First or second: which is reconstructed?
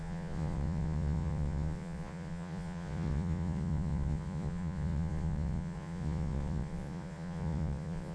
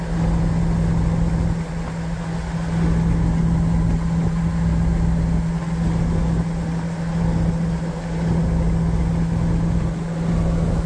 first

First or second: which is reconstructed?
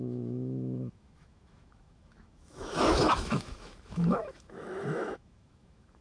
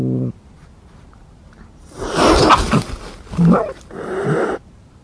first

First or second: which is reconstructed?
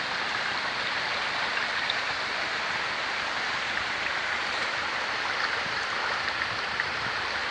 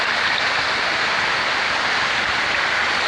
first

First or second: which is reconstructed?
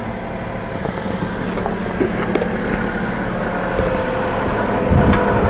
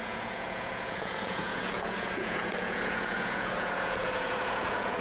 second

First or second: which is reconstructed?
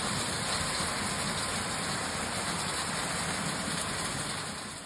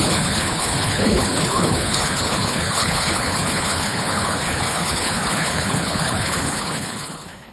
second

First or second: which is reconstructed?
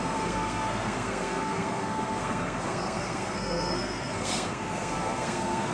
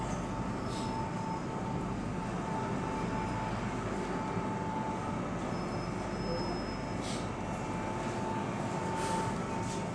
first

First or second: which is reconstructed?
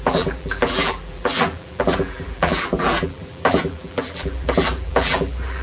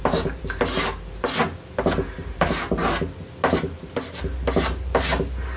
first